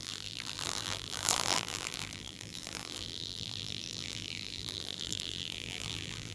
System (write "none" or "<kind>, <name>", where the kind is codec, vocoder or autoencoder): vocoder, BigVGAN v2